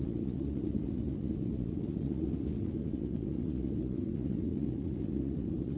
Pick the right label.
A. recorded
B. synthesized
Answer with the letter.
B